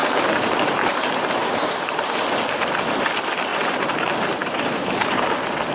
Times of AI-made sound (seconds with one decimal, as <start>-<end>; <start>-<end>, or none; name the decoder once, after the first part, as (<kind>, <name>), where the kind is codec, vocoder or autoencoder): 0.0-2.1 (vocoder, BigVGAN v2); 4.4-5.2